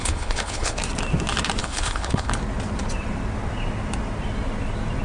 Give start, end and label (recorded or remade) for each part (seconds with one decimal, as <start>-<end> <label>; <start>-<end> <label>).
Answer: 0.0-0.8 remade; 0.8-1.6 recorded; 1.6-2.3 remade; 2.3-5.0 recorded